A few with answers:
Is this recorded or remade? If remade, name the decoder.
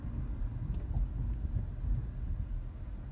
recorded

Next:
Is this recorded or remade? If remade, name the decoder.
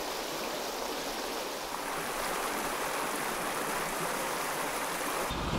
recorded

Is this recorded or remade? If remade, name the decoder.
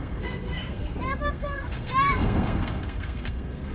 remade, codec, SNAC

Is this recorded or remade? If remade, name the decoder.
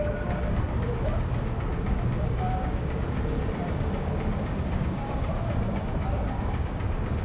remade, codec, DAC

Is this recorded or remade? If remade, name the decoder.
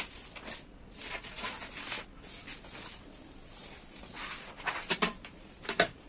recorded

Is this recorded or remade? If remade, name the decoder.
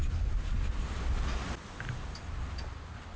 recorded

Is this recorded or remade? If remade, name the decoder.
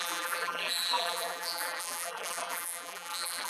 remade, vocoder, BigVGAN v2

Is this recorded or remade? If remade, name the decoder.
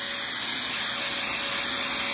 recorded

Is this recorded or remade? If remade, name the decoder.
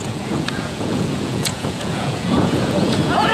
remade, vocoder, Vocos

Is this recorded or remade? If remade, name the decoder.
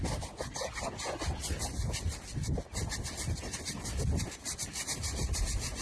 recorded